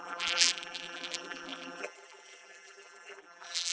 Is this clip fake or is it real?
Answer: fake